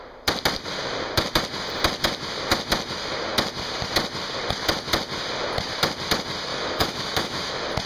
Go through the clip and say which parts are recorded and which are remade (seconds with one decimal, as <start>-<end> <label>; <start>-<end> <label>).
0.0-6.5 recorded; 6.5-7.5 remade; 7.5-7.9 recorded